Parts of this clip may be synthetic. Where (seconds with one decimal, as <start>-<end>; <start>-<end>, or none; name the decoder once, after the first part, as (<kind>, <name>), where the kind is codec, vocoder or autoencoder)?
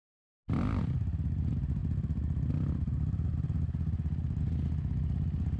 none